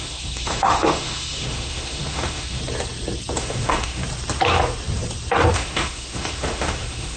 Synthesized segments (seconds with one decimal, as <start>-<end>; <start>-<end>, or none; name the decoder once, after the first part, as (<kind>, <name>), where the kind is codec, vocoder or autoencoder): 0.0-2.6 (autoencoder, DAC-VAE); 3.4-4.0; 5.5-7.2